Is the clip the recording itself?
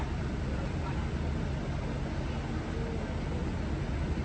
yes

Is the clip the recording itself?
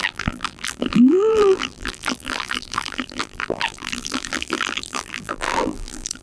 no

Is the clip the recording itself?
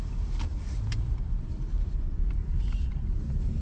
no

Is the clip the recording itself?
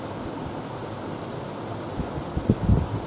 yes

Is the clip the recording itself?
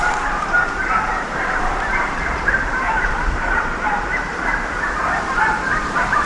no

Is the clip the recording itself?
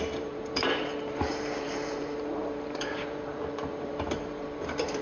no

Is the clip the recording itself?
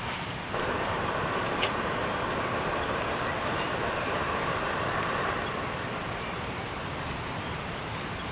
no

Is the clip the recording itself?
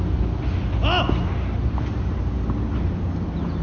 yes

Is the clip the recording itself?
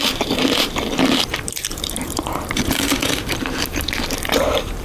no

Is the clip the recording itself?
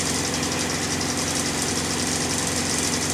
no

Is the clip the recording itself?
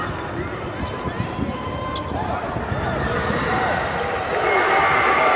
no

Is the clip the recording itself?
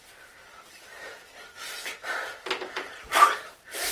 no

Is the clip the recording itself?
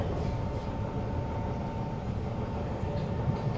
yes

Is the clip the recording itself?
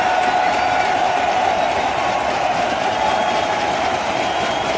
no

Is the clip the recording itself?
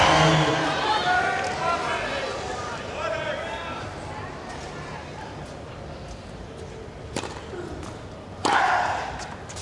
yes